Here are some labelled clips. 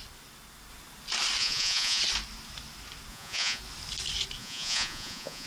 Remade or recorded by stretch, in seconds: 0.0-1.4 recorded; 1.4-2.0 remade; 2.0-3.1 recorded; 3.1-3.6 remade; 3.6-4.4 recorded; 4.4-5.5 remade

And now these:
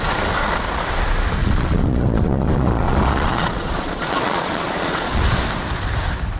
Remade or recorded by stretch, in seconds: 0.0-1.4 recorded; 1.4-5.2 remade; 5.2-6.4 recorded

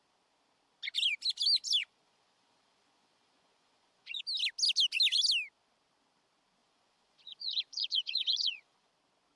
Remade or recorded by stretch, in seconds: 0.0-1.8 recorded; 1.8-4.2 remade; 4.2-6.6 recorded; 6.6-8.9 remade; 8.9-9.3 recorded

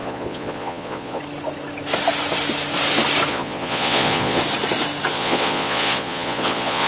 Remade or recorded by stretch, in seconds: 0.0-1.2 remade; 1.2-3.3 recorded; 3.3-4.4 remade; 4.4-5.1 recorded; 5.1-6.9 remade

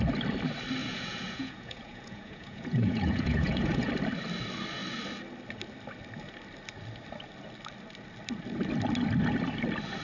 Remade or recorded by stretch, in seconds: 0.0-0.8 recorded; 0.8-3.9 remade; 3.9-10.0 recorded